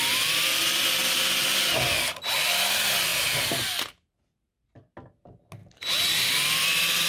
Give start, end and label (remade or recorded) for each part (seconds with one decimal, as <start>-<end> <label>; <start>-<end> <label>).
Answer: 0.0-5.6 recorded; 5.6-7.1 remade